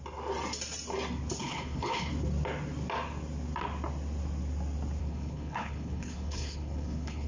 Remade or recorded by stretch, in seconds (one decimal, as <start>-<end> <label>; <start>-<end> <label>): 0.0-1.4 recorded; 1.4-2.1 remade; 2.1-5.0 recorded; 5.0-7.3 remade